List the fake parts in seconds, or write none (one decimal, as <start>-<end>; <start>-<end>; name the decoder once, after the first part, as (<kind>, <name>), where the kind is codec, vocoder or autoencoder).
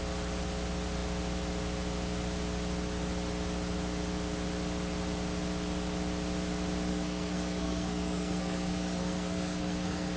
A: 6.9-10.2 (codec, SNAC)